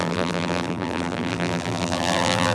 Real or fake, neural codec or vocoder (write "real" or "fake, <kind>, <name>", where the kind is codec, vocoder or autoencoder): fake, vocoder, BigVGAN v2